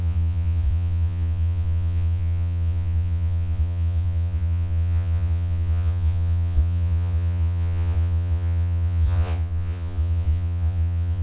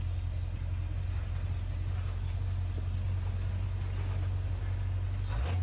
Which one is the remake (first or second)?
first